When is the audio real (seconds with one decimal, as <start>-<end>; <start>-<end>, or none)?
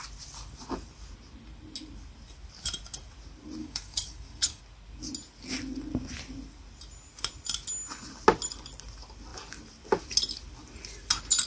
0.0-3.6; 4.6-11.5